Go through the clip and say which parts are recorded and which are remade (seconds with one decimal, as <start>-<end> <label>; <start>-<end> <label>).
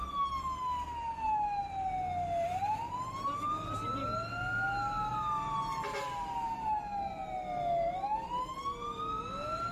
0.0-9.7 recorded